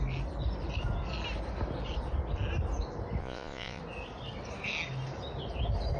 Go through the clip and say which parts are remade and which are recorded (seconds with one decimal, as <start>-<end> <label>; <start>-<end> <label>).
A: 0.0-3.2 recorded; 3.2-3.8 remade; 3.8-6.0 recorded